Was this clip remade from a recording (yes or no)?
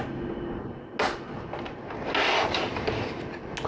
no